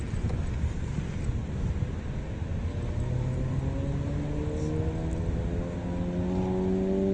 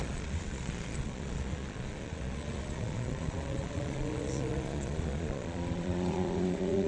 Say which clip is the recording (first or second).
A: first